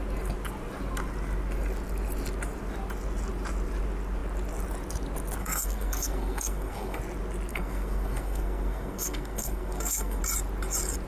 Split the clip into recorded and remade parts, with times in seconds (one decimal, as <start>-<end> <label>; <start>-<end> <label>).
0.0-5.4 recorded; 5.4-7.0 remade; 7.0-7.5 recorded; 7.5-10.2 remade; 10.2-11.1 recorded